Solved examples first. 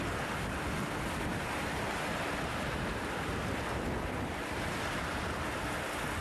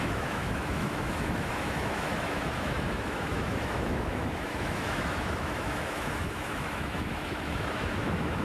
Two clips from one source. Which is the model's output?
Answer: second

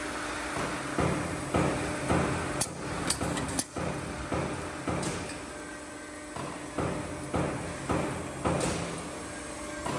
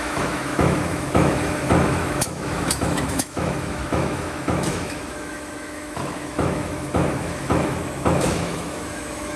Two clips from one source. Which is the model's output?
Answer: second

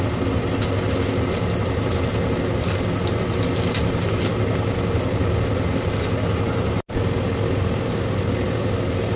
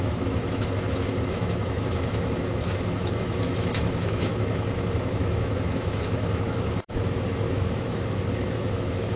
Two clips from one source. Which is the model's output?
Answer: second